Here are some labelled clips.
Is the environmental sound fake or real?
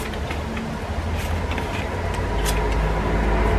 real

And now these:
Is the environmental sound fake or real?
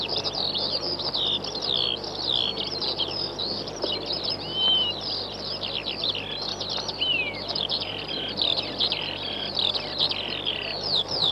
real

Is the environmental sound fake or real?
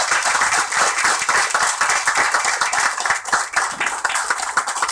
real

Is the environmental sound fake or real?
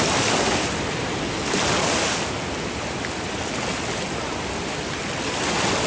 real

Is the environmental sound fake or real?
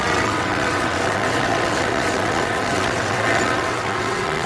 fake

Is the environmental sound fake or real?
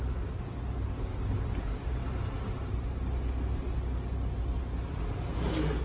real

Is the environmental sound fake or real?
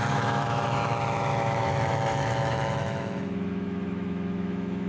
fake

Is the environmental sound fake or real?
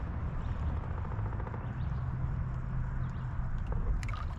real